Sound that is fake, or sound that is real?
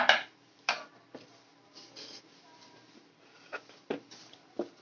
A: fake